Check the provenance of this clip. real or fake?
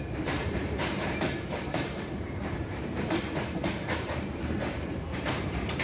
fake